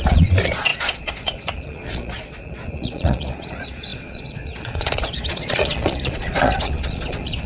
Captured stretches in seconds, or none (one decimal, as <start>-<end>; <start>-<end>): none